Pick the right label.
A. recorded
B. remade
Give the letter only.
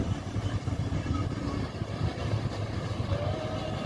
A